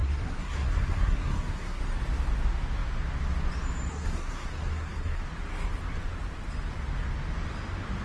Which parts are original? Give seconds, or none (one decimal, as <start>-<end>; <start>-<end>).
1.8-3.9; 5.2-8.0